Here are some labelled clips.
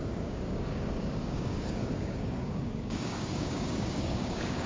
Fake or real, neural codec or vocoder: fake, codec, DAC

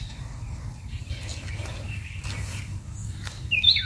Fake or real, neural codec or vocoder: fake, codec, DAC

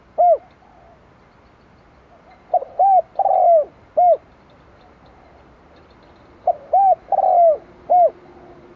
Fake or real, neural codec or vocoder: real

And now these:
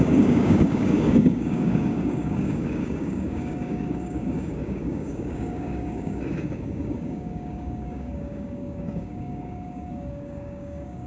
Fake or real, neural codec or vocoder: fake, codec, DAC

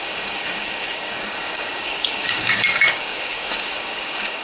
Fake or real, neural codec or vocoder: fake, codec, DAC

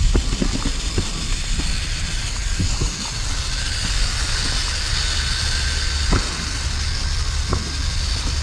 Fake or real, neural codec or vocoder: real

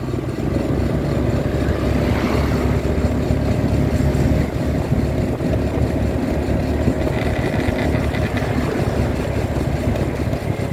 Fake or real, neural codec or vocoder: real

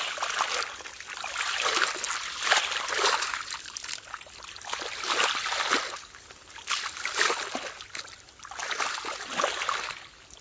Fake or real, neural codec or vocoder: real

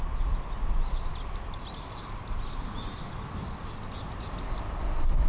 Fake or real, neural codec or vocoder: real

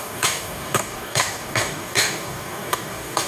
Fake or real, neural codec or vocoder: fake, codec, DAC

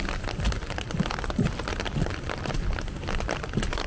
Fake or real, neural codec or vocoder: real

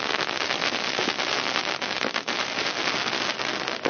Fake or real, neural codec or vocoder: real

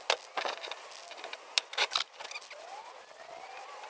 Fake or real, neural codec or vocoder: real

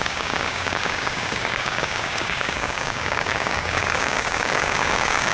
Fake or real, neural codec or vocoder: fake, codec, DAC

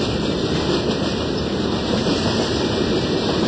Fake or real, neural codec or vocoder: real